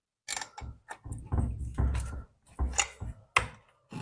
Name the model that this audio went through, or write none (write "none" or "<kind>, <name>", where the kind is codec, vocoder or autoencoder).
none